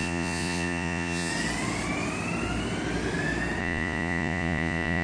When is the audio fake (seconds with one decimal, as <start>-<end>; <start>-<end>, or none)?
0.0-1.3; 3.6-5.0